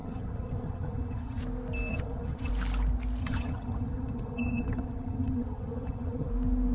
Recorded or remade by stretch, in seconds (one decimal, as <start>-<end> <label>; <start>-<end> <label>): 0.0-1.4 remade; 1.4-1.9 recorded; 1.9-2.5 remade; 2.5-3.2 recorded; 3.2-6.3 remade; 6.3-6.7 recorded